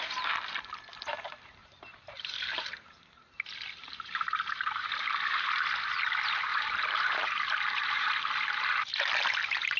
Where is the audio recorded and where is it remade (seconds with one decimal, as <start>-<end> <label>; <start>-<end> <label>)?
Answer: 0.0-1.6 recorded; 1.6-4.9 remade; 4.9-6.5 recorded; 6.5-8.1 remade; 8.1-9.8 recorded